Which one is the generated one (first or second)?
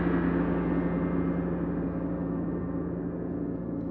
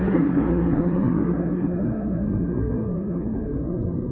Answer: second